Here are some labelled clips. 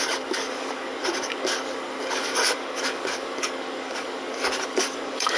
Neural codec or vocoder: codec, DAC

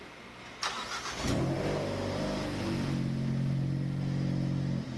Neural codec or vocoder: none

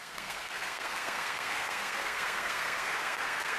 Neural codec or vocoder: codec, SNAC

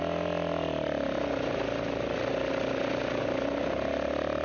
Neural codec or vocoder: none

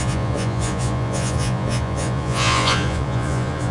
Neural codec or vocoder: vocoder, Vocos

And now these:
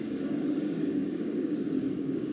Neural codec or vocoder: codec, DAC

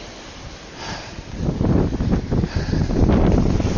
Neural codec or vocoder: none